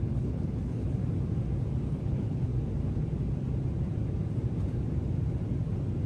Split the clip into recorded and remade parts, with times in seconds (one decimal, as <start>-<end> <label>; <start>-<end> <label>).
0.0-1.0 remade; 1.0-1.9 recorded; 1.9-2.5 remade; 2.5-6.1 recorded